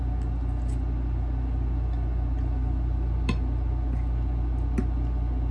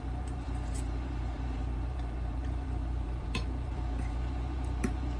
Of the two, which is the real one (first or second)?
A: first